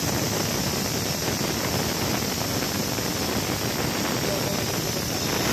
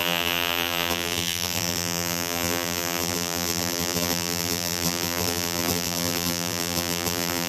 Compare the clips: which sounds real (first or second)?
first